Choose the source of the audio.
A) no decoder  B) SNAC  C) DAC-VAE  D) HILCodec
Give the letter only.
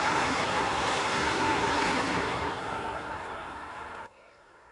B